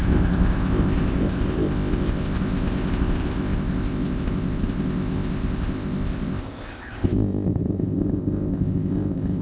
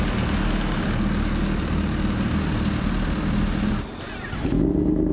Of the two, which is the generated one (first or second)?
first